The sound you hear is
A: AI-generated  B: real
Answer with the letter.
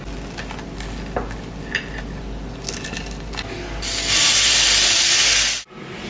B